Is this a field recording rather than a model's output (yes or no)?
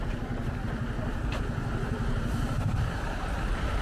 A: no